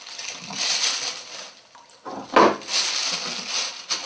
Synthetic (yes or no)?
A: no